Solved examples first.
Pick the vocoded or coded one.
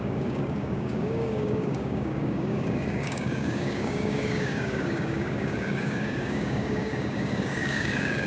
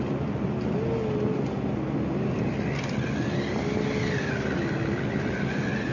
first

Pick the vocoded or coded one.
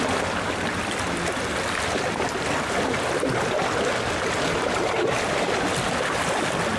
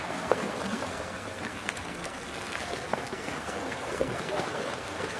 second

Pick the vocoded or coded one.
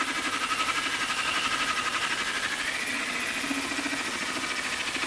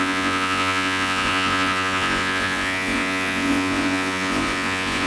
second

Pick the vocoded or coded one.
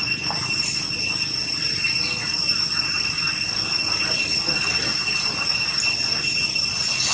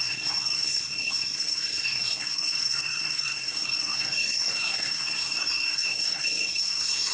second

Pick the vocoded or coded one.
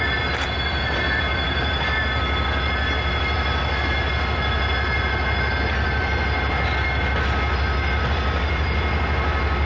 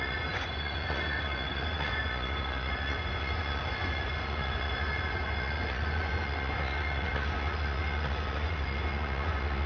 second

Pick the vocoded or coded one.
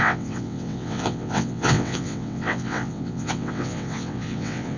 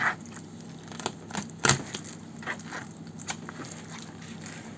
first